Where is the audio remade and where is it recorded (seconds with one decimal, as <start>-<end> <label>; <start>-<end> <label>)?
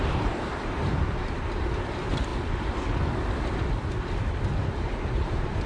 0.0-2.3 remade; 2.3-4.4 recorded; 4.4-5.7 remade